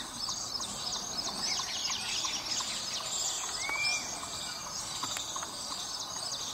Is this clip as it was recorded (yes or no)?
yes